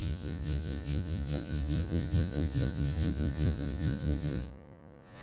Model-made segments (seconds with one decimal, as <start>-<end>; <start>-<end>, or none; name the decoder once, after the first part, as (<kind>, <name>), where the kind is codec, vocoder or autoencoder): 0.0-5.2 (vocoder, Vocos)